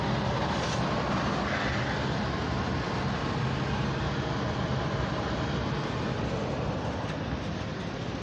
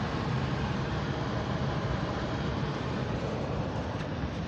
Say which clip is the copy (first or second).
second